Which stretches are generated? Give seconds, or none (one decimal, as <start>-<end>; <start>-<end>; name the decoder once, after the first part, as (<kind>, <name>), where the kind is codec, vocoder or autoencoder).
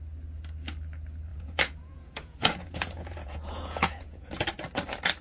1.3-4.3 (vocoder, Vocos)